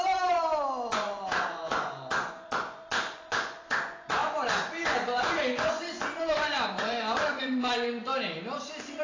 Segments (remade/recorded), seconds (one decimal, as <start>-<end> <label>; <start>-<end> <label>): 0.0-8.1 remade; 8.1-9.0 recorded